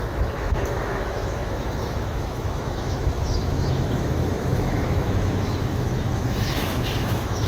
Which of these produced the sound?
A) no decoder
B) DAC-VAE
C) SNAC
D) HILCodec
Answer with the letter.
B